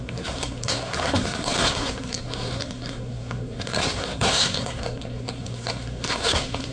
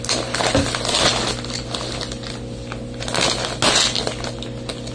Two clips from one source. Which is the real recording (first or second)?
second